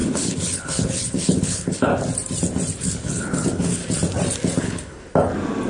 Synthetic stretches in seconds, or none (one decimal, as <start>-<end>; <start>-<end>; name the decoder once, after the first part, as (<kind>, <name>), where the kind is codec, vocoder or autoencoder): 0.0-1.9 (codec, HILCodec); 2.8-3.8; 4.6-5.1